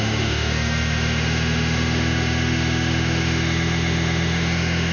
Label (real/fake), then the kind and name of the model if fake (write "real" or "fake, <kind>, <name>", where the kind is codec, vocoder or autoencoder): fake, autoencoder, DAC-VAE